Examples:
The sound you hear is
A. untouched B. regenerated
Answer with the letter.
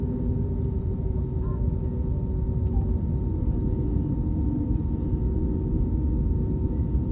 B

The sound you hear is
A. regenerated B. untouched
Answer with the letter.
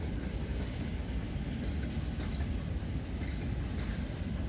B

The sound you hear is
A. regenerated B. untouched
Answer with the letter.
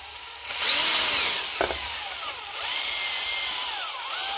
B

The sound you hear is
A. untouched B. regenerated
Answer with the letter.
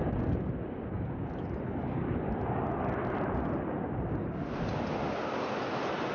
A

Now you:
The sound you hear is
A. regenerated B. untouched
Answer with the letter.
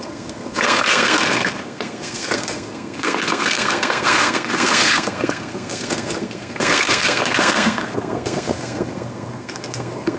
A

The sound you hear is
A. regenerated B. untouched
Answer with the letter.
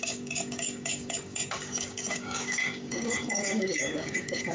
A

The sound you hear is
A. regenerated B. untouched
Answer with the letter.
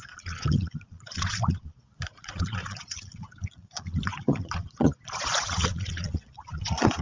A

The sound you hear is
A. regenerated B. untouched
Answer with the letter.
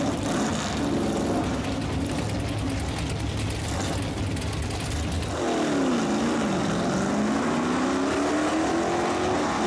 B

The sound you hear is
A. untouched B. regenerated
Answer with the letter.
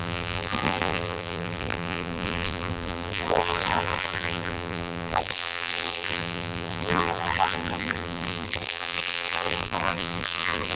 B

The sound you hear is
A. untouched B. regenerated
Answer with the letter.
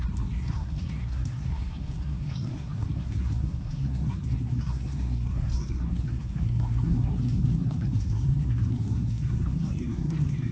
B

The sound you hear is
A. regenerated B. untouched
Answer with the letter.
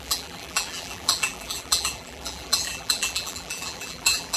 A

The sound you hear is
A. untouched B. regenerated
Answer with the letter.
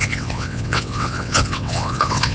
B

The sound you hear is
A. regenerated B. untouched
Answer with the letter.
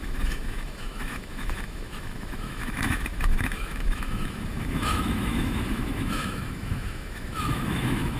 A